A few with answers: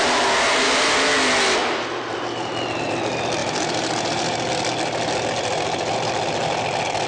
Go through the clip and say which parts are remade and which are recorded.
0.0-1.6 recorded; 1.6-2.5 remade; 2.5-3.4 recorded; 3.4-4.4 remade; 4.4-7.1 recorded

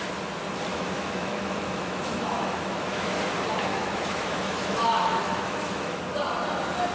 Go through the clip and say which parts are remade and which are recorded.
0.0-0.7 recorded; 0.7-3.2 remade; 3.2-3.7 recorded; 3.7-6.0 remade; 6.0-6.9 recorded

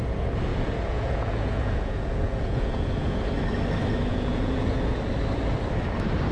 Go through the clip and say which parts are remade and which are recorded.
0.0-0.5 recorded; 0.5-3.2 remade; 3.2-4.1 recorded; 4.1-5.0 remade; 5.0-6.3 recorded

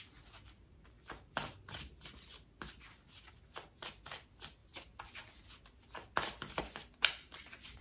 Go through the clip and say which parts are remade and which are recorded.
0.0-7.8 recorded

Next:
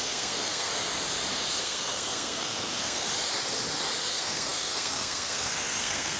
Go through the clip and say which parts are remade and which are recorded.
0.0-0.7 remade; 0.7-1.6 recorded; 1.6-3.1 remade; 3.1-4.1 recorded; 4.1-6.2 remade